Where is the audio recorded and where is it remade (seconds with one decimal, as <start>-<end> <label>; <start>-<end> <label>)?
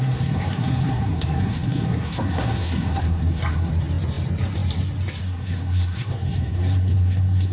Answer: 0.0-3.7 remade; 3.7-5.2 recorded; 5.2-7.5 remade